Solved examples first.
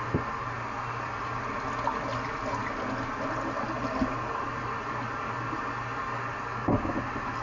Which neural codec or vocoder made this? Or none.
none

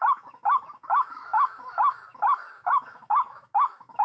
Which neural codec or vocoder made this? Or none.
autoencoder, DAC-VAE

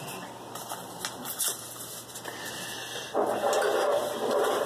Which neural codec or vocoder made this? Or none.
none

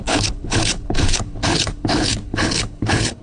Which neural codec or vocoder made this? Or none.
codec, HILCodec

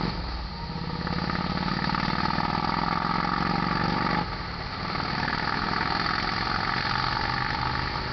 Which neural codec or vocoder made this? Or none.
none